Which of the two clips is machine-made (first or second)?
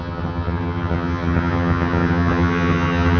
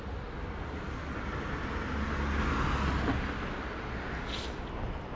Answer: first